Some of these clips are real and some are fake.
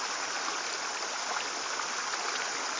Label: real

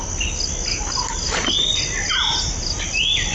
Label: real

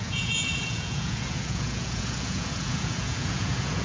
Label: fake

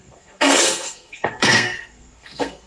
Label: fake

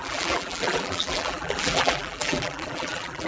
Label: fake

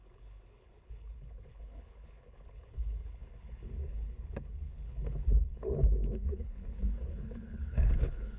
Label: fake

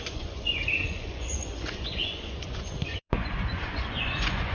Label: fake